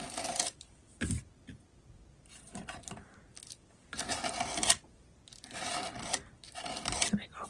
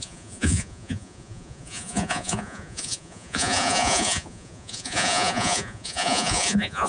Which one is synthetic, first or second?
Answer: second